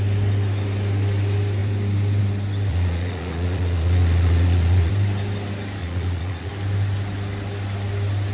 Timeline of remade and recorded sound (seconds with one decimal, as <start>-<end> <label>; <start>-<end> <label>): 0.0-2.7 recorded; 2.7-4.9 remade; 4.9-5.8 recorded; 5.8-6.5 remade; 6.5-8.3 recorded